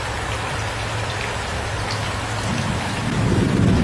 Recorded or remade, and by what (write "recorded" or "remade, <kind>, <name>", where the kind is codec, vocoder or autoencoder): remade, vocoder, BigVGAN v2